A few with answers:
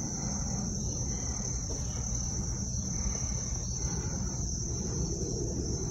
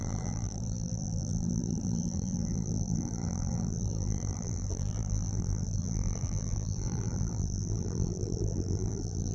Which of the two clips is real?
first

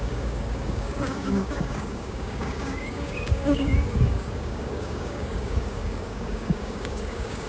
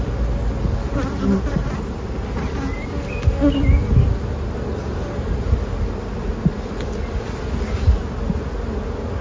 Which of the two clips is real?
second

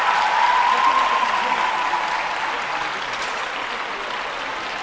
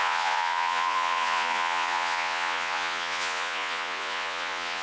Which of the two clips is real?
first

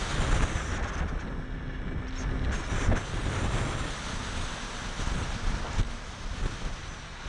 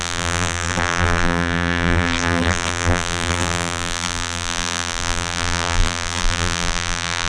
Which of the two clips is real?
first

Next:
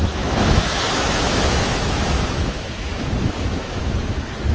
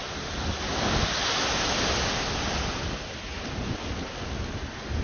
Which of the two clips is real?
second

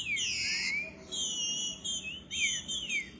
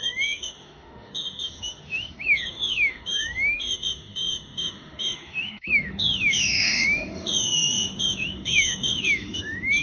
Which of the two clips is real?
first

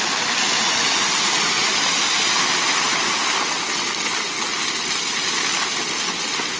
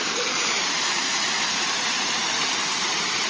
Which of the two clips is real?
first